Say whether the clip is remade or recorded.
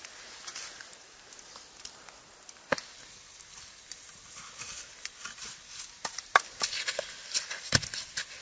recorded